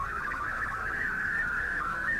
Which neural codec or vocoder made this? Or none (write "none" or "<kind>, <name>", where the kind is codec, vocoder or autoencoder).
codec, SNAC